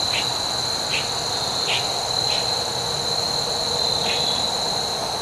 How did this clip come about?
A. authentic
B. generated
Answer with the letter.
A